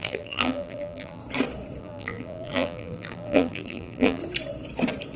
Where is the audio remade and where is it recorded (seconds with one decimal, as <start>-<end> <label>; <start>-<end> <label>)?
0.0-1.2 remade; 1.2-1.8 recorded; 1.8-4.2 remade; 4.2-5.2 recorded